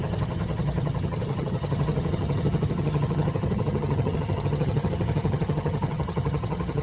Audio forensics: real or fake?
fake